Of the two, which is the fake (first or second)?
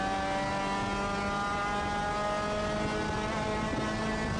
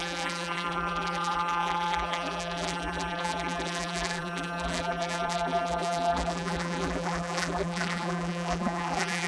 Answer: second